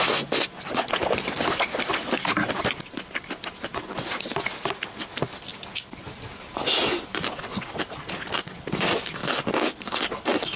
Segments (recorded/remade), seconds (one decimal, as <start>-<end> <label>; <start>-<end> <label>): 0.0-10.6 recorded